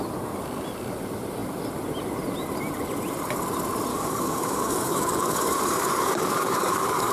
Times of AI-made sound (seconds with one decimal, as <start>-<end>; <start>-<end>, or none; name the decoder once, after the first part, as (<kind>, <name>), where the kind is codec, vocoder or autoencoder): 3.9-7.1 (codec, DAC)

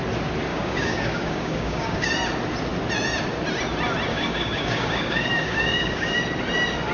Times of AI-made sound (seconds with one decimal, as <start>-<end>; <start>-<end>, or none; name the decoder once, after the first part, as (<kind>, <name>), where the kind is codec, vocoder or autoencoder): 0.5-2.1 (codec, DAC); 4.1-6.2

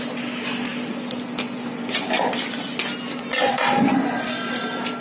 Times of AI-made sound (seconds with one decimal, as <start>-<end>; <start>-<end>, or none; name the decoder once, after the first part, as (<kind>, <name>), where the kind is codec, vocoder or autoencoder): none

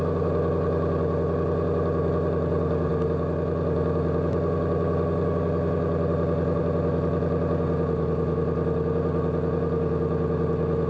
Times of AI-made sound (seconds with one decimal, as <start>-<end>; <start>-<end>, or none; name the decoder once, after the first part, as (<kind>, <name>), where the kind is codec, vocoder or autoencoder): none

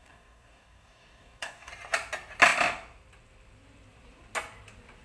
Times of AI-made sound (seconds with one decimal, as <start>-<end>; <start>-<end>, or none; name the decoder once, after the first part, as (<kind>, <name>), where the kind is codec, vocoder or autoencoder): 0.0-1.7 (codec, DAC)

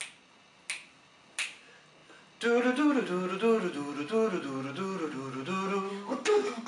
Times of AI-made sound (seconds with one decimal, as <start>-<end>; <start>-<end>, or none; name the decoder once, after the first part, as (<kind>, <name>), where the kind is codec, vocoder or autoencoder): 5.9-6.7 (codec, DAC)

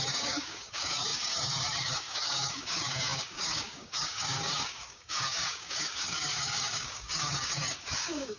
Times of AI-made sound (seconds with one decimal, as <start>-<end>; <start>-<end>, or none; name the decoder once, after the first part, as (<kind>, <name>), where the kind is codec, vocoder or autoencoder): 0.0-8.4 (codec, DAC)